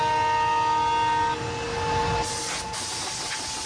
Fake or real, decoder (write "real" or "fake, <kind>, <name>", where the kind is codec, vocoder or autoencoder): real